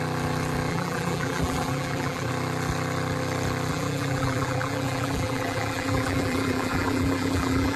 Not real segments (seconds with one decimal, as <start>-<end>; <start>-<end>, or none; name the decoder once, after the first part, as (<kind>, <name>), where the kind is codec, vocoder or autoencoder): 0.7-2.3 (vocoder, BigVGAN v2); 3.7-7.8